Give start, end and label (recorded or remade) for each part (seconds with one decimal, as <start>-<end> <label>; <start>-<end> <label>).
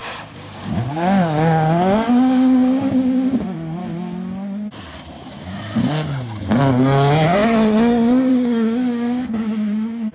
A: 0.0-3.8 remade; 3.8-8.3 recorded; 8.3-10.1 remade